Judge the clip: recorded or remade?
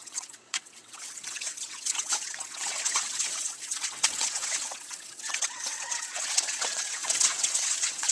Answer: remade